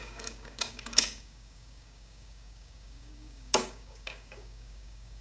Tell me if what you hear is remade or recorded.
remade